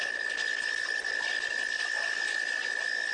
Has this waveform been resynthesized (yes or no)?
no